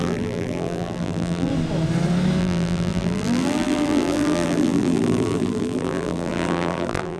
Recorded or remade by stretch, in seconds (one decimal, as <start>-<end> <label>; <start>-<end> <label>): 0.0-1.5 remade; 1.5-2.4 recorded; 2.4-7.2 remade